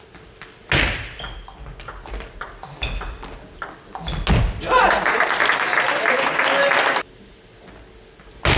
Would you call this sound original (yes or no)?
yes